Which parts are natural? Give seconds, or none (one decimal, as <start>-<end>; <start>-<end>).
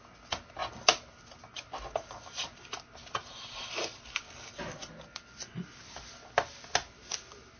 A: 0.0-0.6; 4.2-4.8; 6.5-7.6